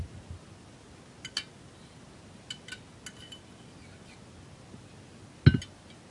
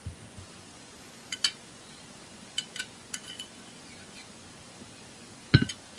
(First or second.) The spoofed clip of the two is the second